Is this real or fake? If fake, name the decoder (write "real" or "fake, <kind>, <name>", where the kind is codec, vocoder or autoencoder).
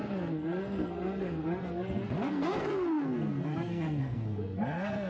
fake, codec, SNAC